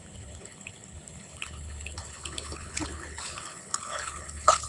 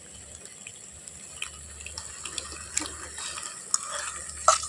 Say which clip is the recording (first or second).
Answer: second